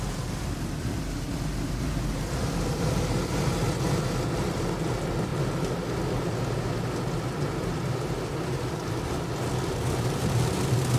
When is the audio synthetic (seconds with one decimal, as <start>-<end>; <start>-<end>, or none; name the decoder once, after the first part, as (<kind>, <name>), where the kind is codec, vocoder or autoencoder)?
none